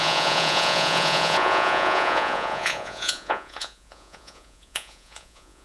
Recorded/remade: remade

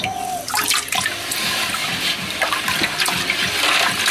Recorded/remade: recorded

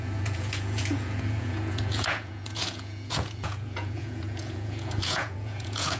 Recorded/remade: remade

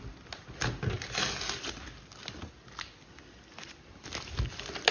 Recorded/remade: recorded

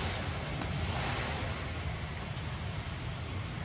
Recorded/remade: recorded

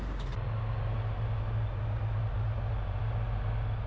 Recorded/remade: recorded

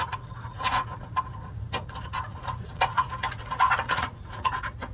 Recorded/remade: remade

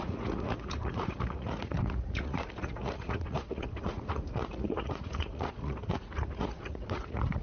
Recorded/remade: remade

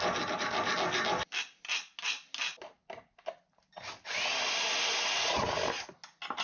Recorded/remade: recorded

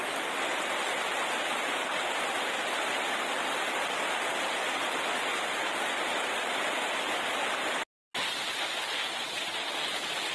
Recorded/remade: recorded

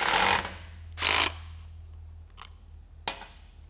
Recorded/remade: recorded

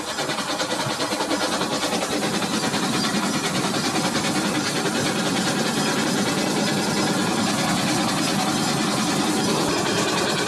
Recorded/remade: recorded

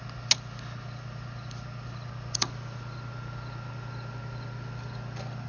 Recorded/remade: recorded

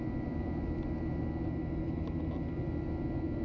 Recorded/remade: recorded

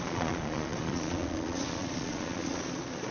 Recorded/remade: remade